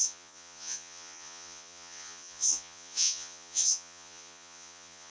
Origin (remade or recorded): remade